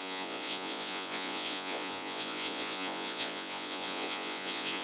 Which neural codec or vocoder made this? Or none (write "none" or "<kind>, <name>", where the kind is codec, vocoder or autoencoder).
vocoder, Vocos